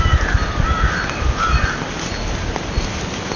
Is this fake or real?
real